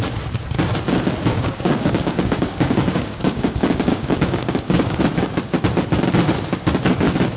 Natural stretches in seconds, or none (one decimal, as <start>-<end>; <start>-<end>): 0.0-1.3; 5.0-7.4

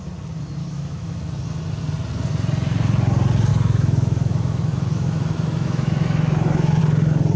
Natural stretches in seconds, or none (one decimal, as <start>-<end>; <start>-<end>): 0.0-0.6; 1.1-3.5; 6.8-7.4

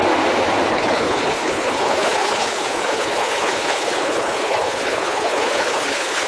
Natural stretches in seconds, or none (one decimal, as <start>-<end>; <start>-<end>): 0.0-0.7

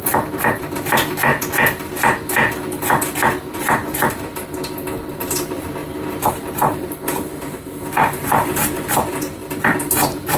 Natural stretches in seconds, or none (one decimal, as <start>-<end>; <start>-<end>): 1.3-3.5; 4.3-5.1; 5.8-6.3

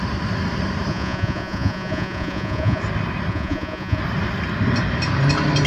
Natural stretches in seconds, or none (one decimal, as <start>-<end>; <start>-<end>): 0.0-0.9; 2.8-3.3; 4.0-5.7

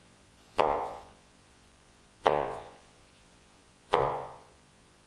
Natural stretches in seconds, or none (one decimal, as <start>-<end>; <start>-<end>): none

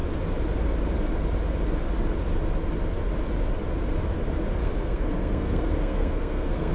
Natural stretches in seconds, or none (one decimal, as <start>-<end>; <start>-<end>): 0.0-4.6